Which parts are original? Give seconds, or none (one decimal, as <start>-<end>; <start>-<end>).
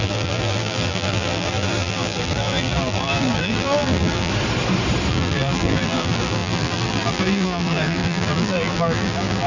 4.3-5.1